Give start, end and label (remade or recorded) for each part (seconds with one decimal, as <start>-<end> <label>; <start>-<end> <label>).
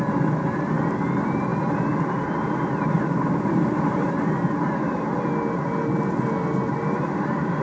0.0-7.6 recorded